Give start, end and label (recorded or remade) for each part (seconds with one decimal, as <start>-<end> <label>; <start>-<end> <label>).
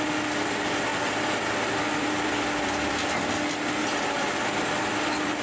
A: 0.0-0.9 recorded; 0.9-2.9 remade; 2.9-3.8 recorded; 3.8-4.7 remade; 4.7-5.4 recorded